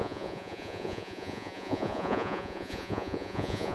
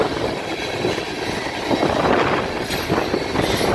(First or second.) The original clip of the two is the second